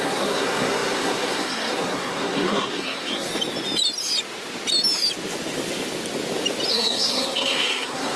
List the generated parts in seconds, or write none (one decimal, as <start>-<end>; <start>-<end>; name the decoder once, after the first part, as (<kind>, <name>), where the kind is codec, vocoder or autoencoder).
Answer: 0.0-3.3 (codec, SNAC); 6.7-8.2